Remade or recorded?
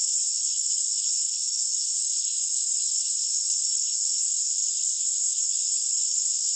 remade